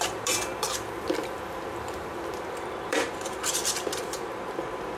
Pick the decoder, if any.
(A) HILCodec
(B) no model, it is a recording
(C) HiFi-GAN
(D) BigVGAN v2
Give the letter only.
D